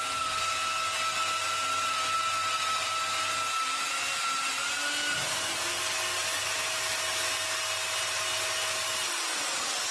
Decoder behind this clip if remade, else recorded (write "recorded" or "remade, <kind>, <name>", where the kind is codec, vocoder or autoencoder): recorded